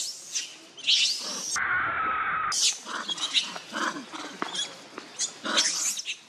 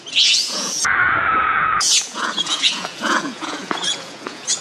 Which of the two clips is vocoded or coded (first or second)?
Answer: second